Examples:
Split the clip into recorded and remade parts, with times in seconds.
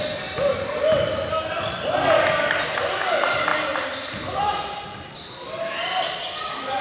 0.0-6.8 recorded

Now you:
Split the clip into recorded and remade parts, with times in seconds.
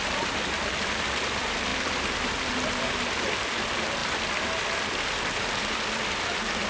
0.0-4.0 remade; 4.0-4.9 recorded; 4.9-6.7 remade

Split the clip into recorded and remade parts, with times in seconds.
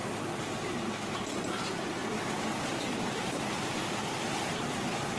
0.0-1.4 recorded; 1.4-5.2 remade